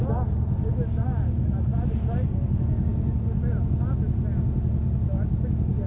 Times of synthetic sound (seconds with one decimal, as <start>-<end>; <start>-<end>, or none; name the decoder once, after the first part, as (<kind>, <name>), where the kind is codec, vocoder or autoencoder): 1.7-2.6 (vocoder, BigVGAN v2)